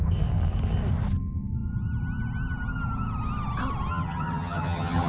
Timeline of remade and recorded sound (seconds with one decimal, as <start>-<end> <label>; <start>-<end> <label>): 0.0-3.9 recorded; 3.9-5.1 remade